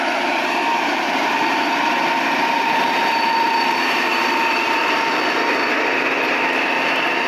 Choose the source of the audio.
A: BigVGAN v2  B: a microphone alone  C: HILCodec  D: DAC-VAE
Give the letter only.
A